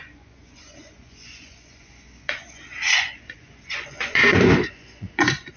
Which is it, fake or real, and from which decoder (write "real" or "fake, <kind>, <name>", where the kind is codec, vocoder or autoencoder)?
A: fake, vocoder, Vocos